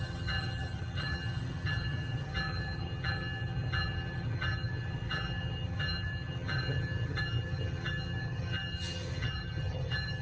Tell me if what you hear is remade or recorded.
remade